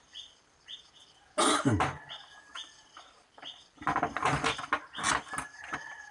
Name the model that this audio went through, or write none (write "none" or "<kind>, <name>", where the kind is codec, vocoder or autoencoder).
none